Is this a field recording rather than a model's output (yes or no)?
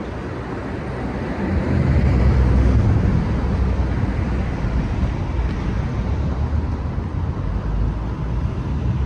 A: yes